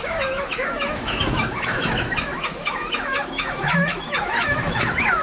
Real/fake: fake